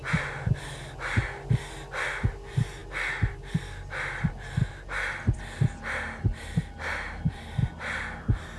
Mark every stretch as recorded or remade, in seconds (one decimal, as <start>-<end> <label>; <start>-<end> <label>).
0.0-8.6 recorded